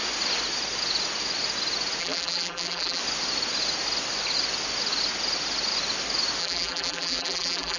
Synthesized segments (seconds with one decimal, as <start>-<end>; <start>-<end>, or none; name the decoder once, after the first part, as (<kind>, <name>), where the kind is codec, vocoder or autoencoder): 2.0-3.0 (vocoder, BigVGAN v2); 6.4-7.8